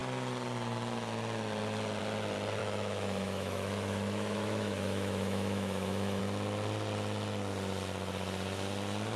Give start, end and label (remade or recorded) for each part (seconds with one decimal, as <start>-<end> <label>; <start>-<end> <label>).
0.0-2.6 recorded; 2.6-6.2 remade; 6.2-9.2 recorded